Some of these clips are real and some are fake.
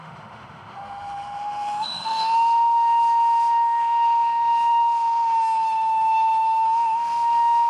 fake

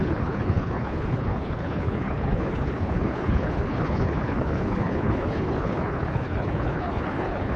fake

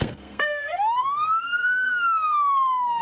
fake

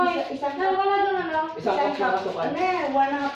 real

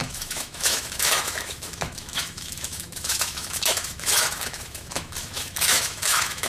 fake